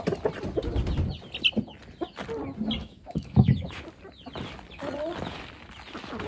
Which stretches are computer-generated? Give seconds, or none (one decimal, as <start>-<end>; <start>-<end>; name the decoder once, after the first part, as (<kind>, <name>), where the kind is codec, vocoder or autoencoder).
2.8-3.8 (autoencoder, DAC-VAE)